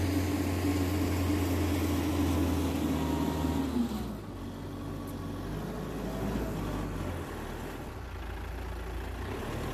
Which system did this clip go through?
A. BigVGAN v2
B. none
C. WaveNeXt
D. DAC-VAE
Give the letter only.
B